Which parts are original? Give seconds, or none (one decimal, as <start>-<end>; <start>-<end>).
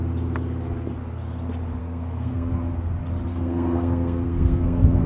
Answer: 0.0-1.8; 2.5-3.3